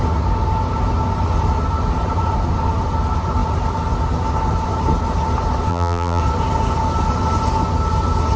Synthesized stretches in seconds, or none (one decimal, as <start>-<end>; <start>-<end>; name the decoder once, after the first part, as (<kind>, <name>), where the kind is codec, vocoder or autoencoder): 5.7-6.2 (vocoder, BigVGAN v2)